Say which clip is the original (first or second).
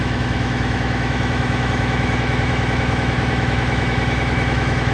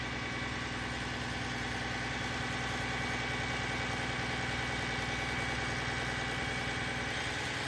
second